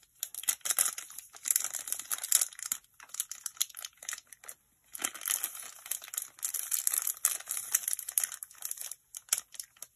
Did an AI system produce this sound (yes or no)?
no